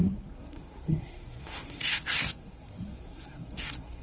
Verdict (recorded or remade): remade